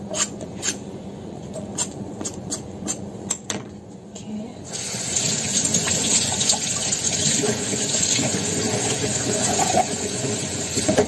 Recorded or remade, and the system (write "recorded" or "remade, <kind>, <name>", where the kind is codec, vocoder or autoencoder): remade, vocoder, Vocos